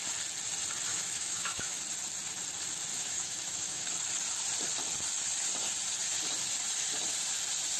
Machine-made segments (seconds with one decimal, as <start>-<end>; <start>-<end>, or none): 0.9-1.8; 2.9-3.9